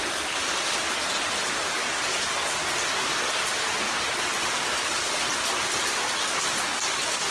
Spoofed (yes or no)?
no